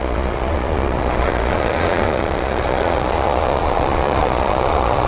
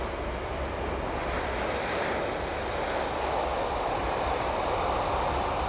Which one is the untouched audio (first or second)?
second